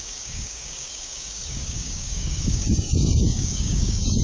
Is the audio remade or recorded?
remade